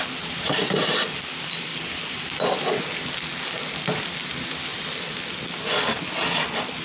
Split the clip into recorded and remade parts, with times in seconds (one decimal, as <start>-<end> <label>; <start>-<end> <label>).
0.0-1.7 recorded; 1.7-4.1 remade; 4.1-6.8 recorded